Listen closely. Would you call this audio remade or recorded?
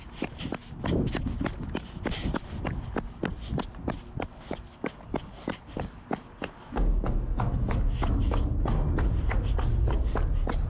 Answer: recorded